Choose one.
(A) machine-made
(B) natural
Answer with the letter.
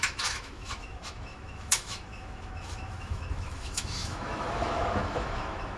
A